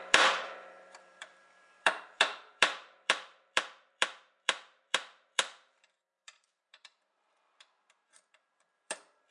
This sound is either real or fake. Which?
fake